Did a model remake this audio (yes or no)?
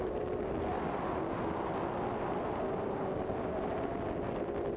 no